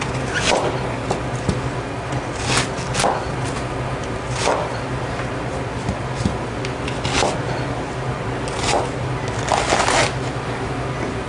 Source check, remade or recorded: recorded